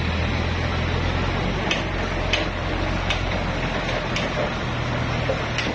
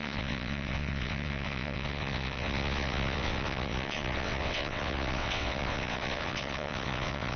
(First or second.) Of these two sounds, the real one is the first